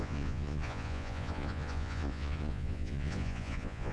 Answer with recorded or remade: remade